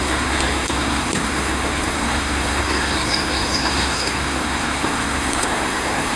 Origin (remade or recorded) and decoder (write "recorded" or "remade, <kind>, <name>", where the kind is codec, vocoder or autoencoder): remade, codec, SNAC